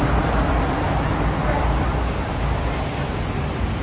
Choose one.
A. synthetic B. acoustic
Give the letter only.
B